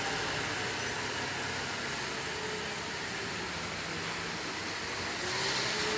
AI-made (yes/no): no